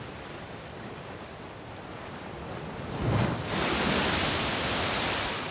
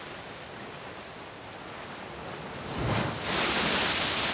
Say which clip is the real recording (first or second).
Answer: second